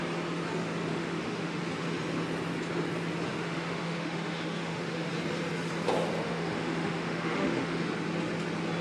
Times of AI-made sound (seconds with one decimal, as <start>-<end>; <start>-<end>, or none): 0.9-1.6; 3.3-5.1; 6.2-7.8